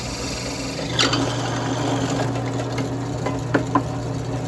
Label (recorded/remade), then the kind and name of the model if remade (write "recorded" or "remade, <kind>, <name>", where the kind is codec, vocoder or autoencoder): recorded